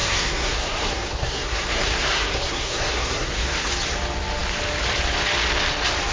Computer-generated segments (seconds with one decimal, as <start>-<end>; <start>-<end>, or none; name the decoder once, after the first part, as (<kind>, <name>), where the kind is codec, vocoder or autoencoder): 0.0-3.7 (codec, SNAC)